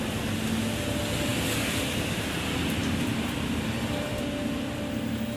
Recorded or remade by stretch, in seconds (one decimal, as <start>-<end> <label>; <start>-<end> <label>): 0.0-2.8 recorded; 2.8-4.8 remade; 4.8-5.4 recorded